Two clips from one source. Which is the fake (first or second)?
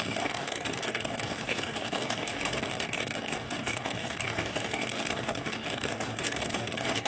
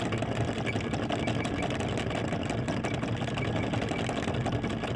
first